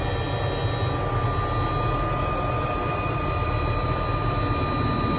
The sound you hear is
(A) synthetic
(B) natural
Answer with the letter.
B